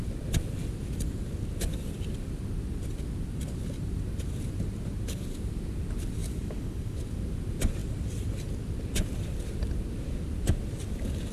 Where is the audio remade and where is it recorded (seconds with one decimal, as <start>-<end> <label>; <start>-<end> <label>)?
0.0-6.2 recorded; 6.2-7.0 remade; 7.0-11.3 recorded